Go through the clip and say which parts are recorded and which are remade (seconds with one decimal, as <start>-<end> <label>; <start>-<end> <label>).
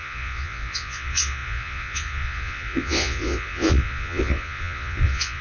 0.0-5.4 remade